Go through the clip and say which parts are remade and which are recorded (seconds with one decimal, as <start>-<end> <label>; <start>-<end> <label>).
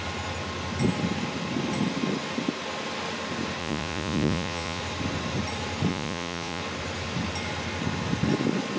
0.0-3.6 recorded; 3.6-4.8 remade; 4.8-5.9 recorded; 5.9-6.6 remade; 6.6-8.8 recorded